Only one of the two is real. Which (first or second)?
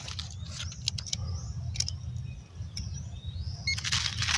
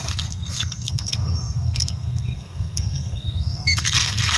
first